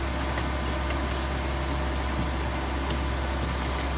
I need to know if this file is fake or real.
real